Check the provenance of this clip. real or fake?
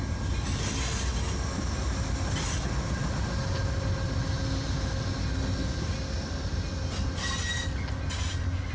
real